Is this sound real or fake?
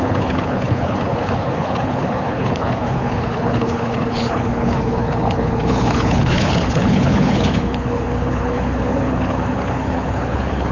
fake